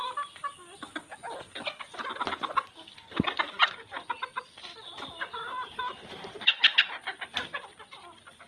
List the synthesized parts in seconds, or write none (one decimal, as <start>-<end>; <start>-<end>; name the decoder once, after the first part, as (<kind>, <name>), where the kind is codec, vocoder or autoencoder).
none